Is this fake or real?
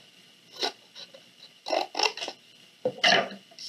real